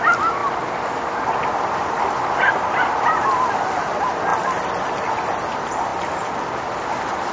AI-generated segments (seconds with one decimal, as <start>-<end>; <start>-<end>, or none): none